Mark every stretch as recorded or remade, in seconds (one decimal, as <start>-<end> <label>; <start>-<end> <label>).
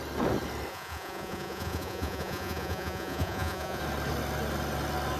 0.0-0.7 recorded; 0.7-3.8 remade; 3.8-5.2 recorded